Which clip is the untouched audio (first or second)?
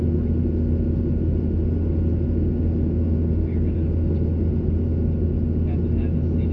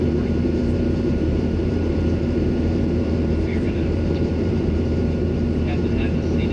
first